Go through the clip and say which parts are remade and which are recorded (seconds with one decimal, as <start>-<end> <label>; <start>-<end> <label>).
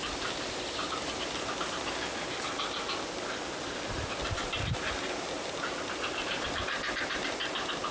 0.0-7.9 recorded